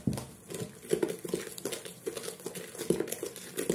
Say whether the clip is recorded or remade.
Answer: recorded